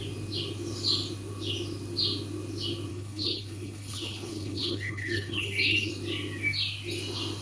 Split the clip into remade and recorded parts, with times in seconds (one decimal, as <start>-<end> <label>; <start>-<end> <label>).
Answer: 0.0-2.9 recorded; 2.9-5.9 remade; 5.9-7.4 recorded